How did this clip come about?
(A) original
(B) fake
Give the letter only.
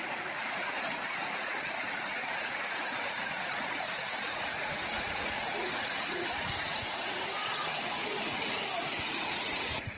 B